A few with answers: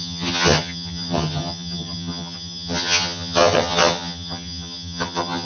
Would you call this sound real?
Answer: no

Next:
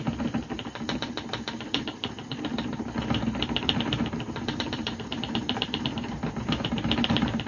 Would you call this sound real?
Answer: no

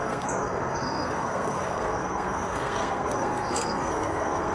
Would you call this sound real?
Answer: no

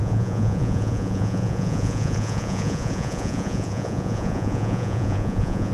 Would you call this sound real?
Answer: no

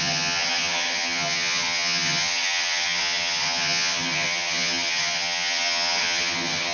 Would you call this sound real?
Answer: no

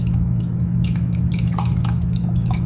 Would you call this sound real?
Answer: no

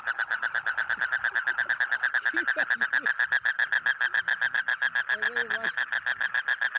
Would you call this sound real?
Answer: yes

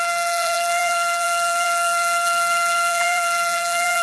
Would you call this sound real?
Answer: no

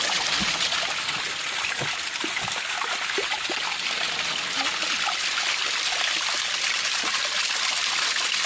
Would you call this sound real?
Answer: yes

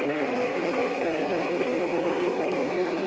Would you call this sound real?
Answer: no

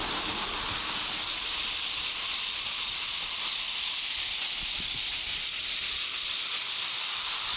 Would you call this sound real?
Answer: yes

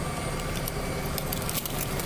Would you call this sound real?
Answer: no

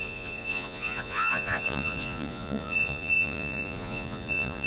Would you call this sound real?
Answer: no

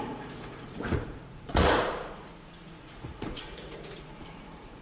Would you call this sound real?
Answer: no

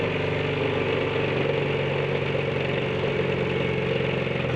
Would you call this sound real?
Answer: yes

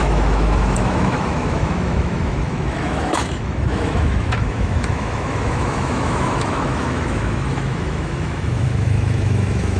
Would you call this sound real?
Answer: no